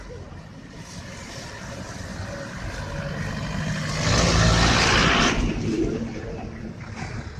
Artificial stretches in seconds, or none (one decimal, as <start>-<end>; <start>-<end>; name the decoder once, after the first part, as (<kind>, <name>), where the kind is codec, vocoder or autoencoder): none